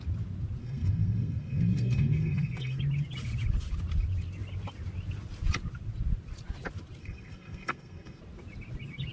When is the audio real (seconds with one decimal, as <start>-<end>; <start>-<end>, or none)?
0.0-0.6; 2.8-7.0; 8.2-9.1